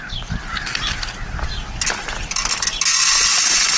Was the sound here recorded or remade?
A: recorded